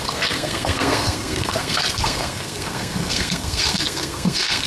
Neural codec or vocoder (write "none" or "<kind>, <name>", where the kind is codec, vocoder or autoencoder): codec, SNAC